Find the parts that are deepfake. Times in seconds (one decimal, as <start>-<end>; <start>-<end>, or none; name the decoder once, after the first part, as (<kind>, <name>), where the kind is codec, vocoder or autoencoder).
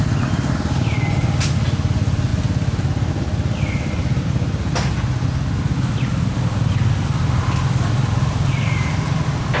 none